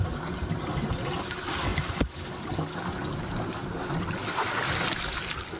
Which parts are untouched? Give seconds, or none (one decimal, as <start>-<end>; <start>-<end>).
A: 0.0-5.6